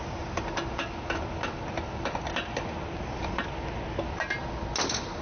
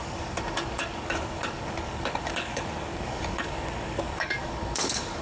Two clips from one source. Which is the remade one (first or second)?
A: second